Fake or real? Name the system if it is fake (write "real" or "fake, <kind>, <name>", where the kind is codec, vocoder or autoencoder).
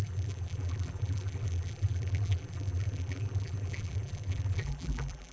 fake, vocoder, BigVGAN v2